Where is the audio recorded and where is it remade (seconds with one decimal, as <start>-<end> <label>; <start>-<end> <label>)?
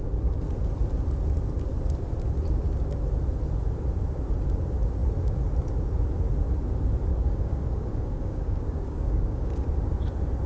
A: 0.0-7.1 recorded; 7.1-9.5 remade; 9.5-10.5 recorded